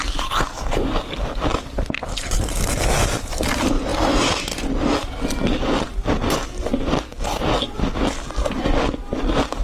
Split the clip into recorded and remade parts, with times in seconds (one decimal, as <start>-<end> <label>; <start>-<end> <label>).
0.0-1.5 recorded; 1.5-2.4 remade; 2.4-9.6 recorded